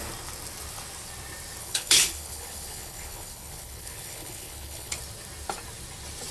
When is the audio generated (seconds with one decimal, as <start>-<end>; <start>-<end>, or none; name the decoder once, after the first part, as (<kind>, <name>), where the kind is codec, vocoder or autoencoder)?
1.6-5.0 (codec, HILCodec)